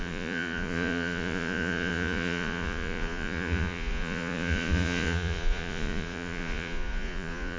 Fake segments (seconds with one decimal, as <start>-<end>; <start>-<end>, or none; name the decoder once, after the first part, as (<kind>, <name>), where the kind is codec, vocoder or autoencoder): 0.0-7.6 (vocoder, Vocos)